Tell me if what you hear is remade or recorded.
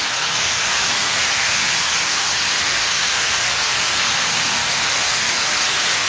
remade